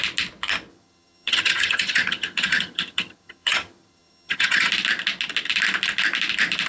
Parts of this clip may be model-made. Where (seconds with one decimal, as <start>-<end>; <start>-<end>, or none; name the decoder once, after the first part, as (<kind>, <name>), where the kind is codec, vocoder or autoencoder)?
0.7-4.7 (vocoder, HiFi-GAN)